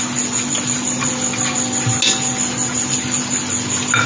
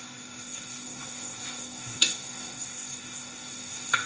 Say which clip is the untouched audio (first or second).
first